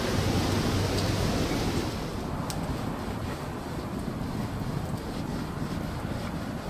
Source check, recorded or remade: recorded